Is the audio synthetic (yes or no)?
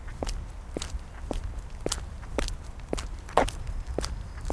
yes